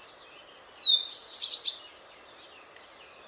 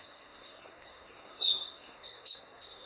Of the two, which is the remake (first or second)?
second